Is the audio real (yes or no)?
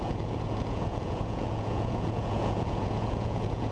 no